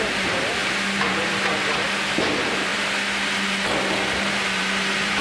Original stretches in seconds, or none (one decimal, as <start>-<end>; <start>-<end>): 2.7-4.2